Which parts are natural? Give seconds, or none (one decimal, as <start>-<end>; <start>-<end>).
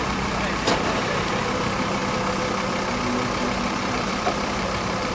2.0-3.4